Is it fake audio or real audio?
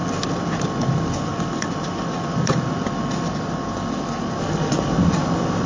real